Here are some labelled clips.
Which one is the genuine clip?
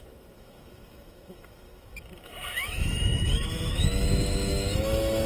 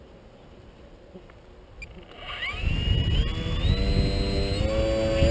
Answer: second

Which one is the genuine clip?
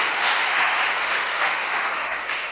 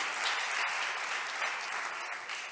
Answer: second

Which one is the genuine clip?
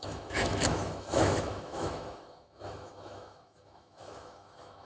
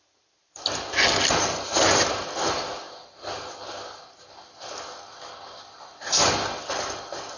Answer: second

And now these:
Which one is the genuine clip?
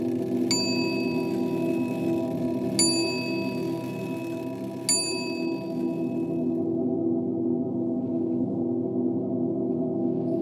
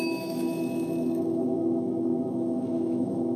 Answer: first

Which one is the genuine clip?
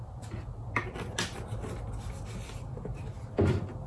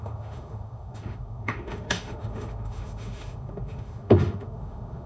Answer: first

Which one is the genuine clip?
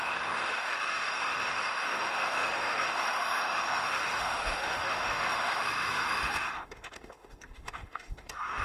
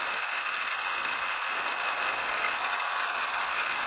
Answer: second